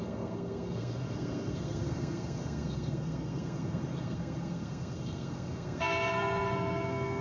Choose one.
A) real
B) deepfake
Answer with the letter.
B